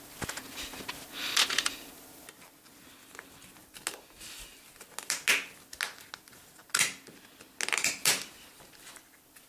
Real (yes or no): yes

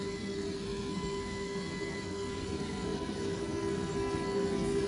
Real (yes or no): no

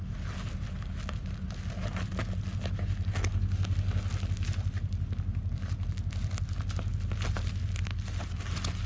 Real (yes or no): yes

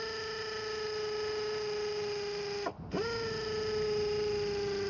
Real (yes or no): yes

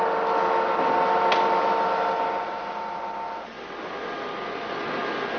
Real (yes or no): yes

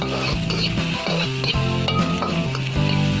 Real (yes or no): yes